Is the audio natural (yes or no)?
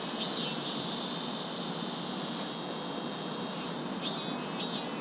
yes